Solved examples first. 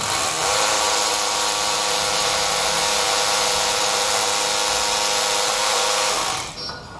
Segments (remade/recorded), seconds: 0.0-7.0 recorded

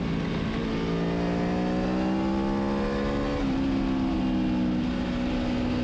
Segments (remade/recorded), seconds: 0.0-5.8 recorded

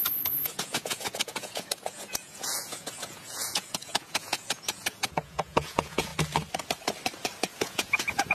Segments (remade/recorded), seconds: 0.0-6.1 remade; 6.1-7.6 recorded; 7.6-8.3 remade

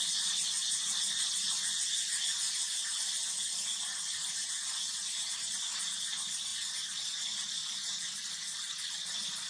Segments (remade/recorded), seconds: 0.0-9.5 recorded